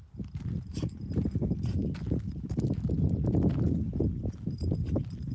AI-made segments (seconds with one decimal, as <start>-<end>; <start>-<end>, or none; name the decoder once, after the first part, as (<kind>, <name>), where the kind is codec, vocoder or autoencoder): none